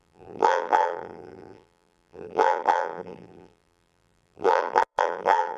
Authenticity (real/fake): fake